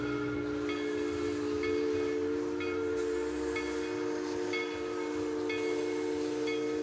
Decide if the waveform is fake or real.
real